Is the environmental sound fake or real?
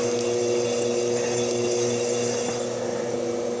real